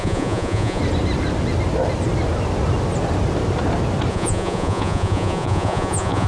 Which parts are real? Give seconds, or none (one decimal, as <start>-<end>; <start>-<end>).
0.8-4.1